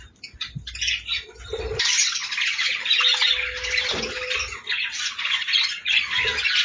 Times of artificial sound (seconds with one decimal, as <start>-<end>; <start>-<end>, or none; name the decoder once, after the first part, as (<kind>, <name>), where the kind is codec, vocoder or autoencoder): none